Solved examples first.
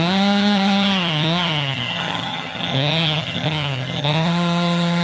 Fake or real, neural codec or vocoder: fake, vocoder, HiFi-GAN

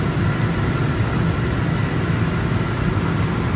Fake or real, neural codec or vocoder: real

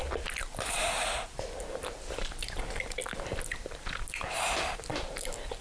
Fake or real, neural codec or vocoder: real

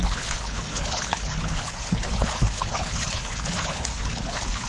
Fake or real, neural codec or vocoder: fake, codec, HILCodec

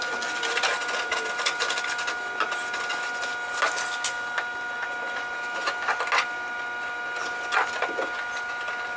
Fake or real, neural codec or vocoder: real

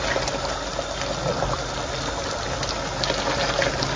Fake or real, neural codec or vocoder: real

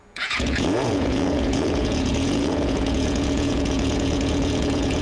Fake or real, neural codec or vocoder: fake, vocoder, Vocos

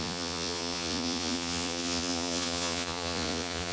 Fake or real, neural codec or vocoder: fake, vocoder, Vocos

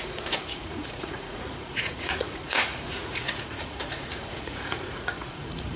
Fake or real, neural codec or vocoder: fake, vocoder, Vocos